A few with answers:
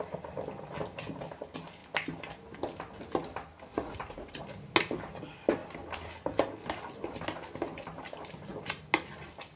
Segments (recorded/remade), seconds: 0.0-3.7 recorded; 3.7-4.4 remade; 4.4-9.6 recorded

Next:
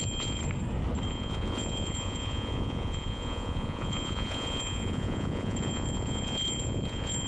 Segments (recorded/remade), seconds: 0.0-0.4 remade; 0.4-1.1 recorded; 1.1-7.3 remade

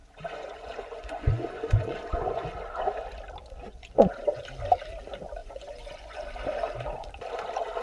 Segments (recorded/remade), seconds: 0.0-2.5 remade; 2.5-3.7 recorded; 3.7-4.4 remade; 4.4-5.4 recorded; 5.4-7.1 remade; 7.1-7.8 recorded